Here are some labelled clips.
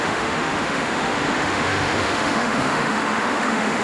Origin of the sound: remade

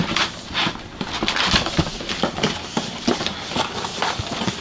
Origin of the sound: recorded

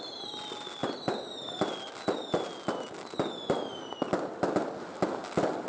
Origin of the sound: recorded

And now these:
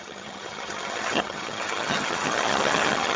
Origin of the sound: remade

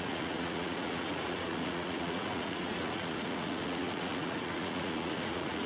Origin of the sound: remade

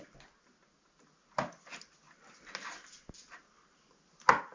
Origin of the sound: recorded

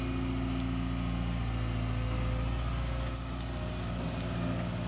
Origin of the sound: recorded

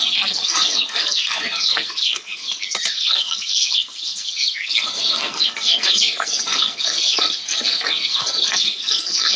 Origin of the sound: remade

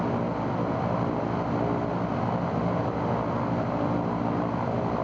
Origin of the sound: recorded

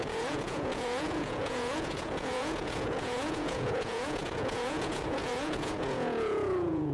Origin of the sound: remade